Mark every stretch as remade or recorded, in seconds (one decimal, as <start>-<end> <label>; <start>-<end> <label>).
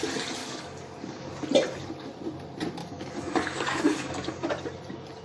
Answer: 0.0-0.4 recorded; 0.4-1.3 remade; 1.3-2.8 recorded; 2.8-4.3 remade; 4.3-5.2 recorded